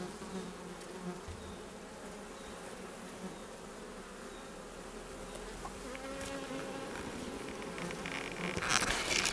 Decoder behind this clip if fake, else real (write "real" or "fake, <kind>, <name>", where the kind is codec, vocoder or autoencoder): real